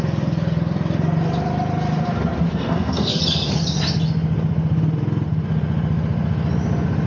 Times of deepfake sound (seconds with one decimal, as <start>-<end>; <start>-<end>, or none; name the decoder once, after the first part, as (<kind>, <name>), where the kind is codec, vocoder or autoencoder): 2.5-3.2 (codec, SNAC)